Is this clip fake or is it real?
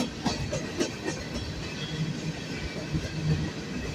real